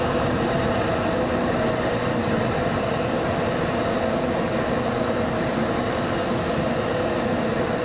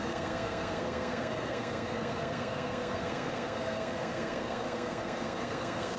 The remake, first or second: second